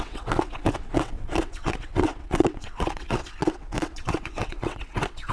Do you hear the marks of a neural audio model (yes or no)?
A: yes